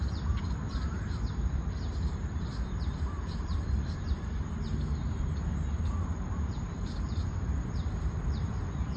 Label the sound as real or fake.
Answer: fake